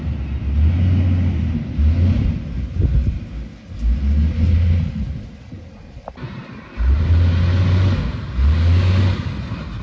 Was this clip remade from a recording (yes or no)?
no